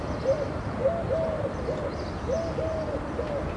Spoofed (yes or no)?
no